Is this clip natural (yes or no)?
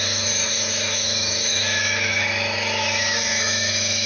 no